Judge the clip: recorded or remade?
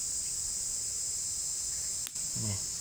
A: recorded